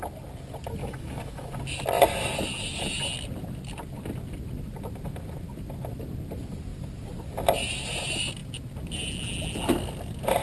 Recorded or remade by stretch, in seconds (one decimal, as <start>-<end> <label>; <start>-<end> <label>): 0.0-0.8 recorded; 0.8-1.5 remade; 1.5-10.4 recorded

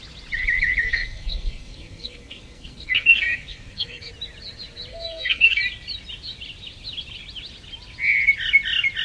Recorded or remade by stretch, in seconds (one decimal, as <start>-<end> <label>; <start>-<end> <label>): 0.0-0.8 recorded; 0.8-4.1 remade; 4.1-4.9 recorded; 4.9-5.6 remade; 5.6-9.0 recorded

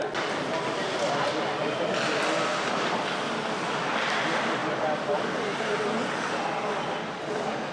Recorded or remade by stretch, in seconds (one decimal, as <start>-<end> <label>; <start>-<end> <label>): 0.0-2.5 recorded; 2.5-3.9 remade; 3.9-7.7 recorded

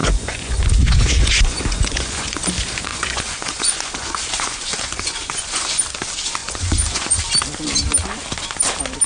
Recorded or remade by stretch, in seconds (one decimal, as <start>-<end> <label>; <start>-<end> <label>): 0.0-2.4 remade; 2.4-2.9 recorded; 2.9-5.8 remade; 5.8-6.4 recorded; 6.4-7.2 remade; 7.2-9.1 recorded